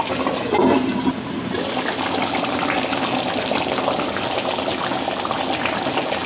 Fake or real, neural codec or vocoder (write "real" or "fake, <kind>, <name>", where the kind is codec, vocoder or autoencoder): real